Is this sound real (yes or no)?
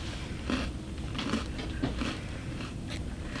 yes